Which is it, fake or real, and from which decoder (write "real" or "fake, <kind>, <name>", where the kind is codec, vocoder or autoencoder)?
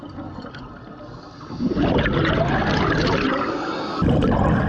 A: real